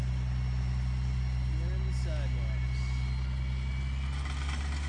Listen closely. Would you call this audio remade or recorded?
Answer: recorded